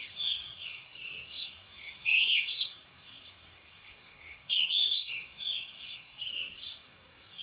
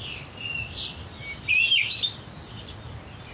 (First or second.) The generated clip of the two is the first